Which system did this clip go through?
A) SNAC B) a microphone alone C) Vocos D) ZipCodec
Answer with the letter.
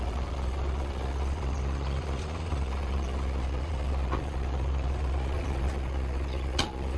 C